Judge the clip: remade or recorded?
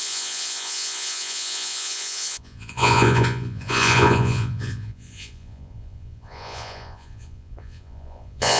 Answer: remade